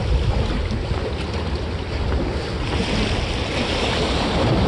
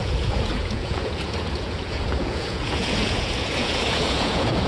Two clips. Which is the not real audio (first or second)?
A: second